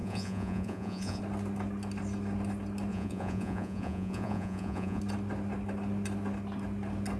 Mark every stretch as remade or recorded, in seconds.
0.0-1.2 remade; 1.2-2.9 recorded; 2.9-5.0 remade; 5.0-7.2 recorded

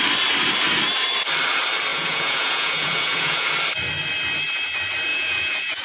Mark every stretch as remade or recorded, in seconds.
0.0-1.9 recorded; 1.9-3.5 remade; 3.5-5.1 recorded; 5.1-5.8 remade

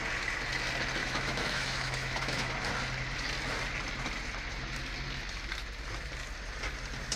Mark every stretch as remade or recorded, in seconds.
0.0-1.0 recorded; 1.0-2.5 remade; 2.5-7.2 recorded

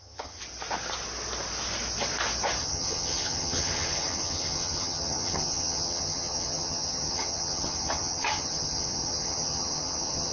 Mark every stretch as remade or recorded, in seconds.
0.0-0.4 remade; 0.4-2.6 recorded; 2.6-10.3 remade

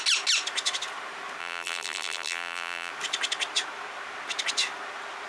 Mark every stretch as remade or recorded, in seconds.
0.0-1.4 recorded; 1.4-2.9 remade; 2.9-5.3 recorded